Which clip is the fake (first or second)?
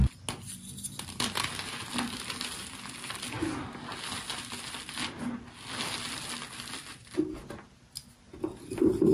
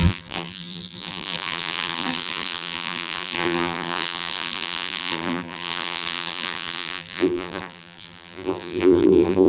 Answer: second